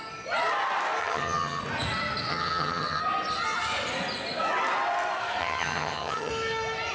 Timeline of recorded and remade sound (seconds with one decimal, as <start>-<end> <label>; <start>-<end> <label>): 0.0-1.0 recorded; 1.0-1.6 remade; 1.6-2.3 recorded; 2.3-3.0 remade; 3.0-5.4 recorded; 5.4-6.3 remade; 6.3-6.9 recorded